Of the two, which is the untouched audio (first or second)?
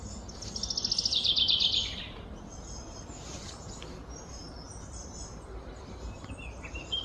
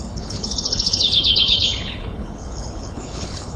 first